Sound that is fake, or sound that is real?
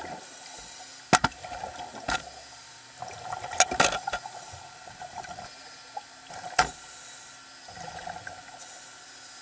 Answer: real